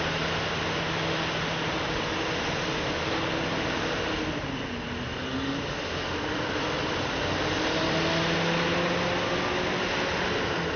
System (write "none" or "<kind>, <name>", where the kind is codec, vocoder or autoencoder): none